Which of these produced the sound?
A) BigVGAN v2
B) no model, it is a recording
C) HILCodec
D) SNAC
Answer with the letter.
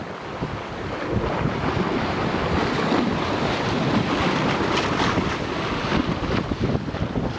B